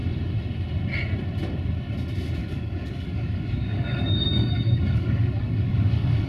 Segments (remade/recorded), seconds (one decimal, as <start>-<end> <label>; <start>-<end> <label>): 0.0-2.4 recorded; 2.4-6.3 remade